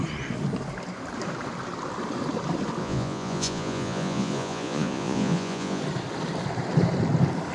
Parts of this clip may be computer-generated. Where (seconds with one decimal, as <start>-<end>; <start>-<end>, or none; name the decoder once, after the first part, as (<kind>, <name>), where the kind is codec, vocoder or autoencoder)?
2.8-5.8 (vocoder, Vocos)